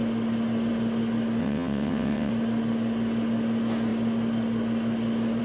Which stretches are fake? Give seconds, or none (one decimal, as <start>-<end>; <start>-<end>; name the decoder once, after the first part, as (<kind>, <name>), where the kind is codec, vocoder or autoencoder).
1.4-2.3 (vocoder, WaveNeXt)